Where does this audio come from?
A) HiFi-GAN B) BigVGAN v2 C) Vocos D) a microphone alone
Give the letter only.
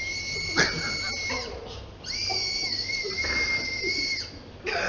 D